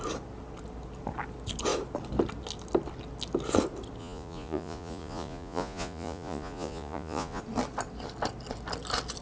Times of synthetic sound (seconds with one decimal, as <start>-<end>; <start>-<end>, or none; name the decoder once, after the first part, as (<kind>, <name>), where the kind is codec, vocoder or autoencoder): 4.0-7.4 (vocoder, Vocos)

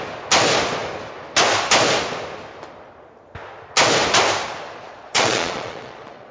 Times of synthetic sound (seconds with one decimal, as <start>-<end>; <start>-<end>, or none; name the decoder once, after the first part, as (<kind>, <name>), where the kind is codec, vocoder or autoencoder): 4.9-6.3 (vocoder, Vocos)